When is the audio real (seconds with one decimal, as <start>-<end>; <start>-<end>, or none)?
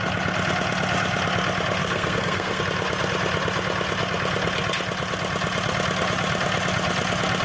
0.0-1.8; 2.6-7.4